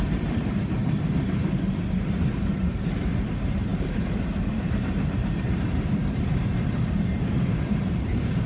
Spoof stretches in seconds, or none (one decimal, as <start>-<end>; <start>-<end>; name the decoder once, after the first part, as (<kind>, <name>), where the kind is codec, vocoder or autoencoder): 0.0-6.5 (vocoder, BigVGAN v2); 7.3-8.5